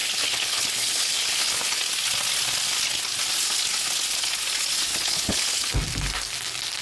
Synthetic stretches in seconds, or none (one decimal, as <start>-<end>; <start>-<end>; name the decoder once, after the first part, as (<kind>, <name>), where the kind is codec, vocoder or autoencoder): 0.0-1.8 (codec, HILCodec); 4.9-5.8